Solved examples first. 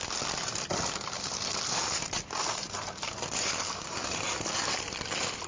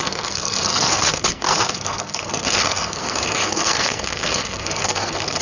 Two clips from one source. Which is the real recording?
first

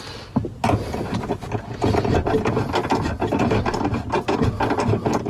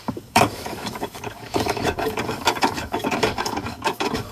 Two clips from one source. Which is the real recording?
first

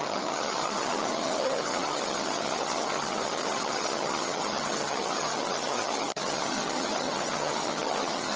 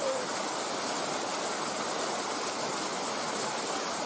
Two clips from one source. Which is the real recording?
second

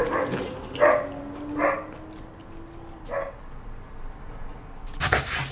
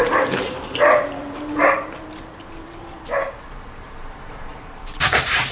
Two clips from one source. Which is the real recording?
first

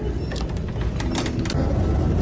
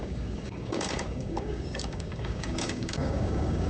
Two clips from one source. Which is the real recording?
first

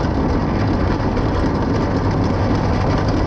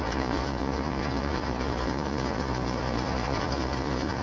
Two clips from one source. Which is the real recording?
first